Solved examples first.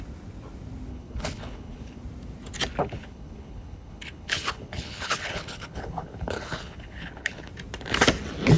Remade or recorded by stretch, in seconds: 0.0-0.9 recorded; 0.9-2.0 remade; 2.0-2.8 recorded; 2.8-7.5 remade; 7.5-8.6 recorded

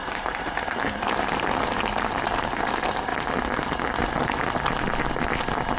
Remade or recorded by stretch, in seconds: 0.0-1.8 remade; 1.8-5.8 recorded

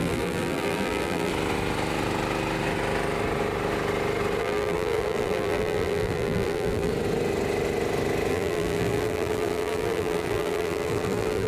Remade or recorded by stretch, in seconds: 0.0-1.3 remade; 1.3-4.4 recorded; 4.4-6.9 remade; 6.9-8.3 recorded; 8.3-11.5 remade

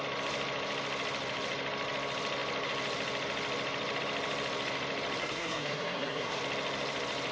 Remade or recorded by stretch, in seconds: 0.0-5.2 recorded; 5.2-6.4 remade; 6.4-7.3 recorded

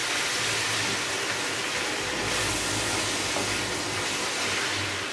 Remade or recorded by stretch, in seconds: 0.0-5.1 recorded